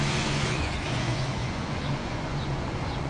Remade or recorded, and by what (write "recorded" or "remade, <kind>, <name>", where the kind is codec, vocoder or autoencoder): remade, vocoder, Vocos